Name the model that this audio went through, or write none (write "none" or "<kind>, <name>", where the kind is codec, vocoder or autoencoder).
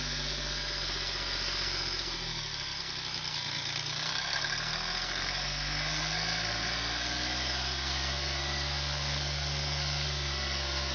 codec, SNAC